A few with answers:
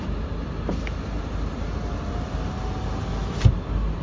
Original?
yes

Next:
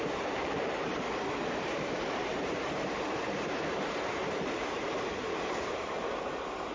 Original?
no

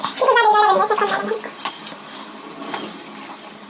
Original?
yes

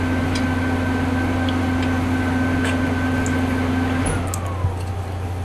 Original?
yes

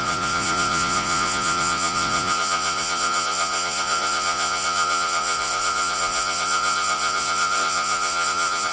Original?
no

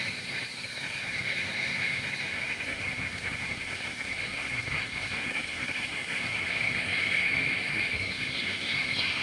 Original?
no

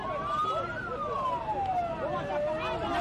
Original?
yes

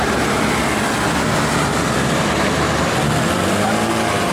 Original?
yes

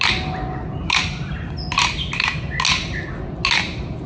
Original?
yes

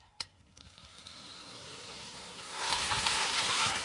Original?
no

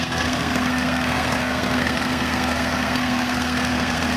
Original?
no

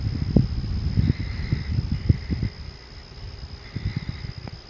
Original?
yes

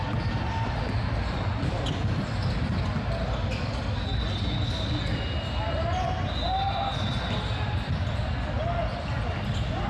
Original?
yes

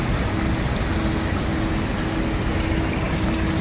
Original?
yes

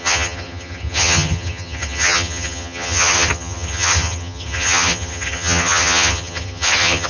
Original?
no